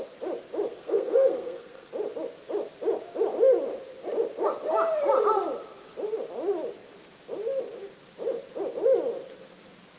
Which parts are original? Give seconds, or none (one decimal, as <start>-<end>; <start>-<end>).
0.0-0.7; 1.9-10.0